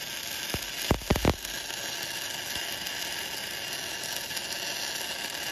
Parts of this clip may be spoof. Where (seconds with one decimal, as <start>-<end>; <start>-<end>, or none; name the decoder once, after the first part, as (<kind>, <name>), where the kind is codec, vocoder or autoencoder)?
none